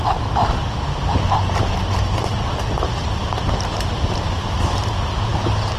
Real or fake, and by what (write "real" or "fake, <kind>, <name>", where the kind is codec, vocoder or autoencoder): fake, vocoder, BigVGAN v2